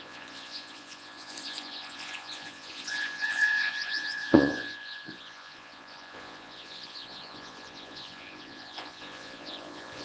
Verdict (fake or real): fake